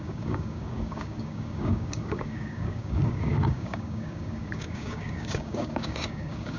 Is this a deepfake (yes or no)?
yes